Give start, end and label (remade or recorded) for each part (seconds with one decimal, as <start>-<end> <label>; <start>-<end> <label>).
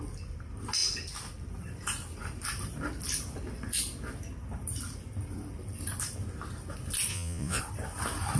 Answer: 0.0-7.1 recorded; 7.1-7.6 remade; 7.6-8.4 recorded